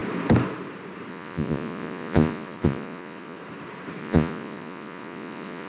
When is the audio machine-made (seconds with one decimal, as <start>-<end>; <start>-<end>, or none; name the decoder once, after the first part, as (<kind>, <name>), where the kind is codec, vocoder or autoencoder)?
1.1-3.4 (vocoder, Vocos); 4.0-5.7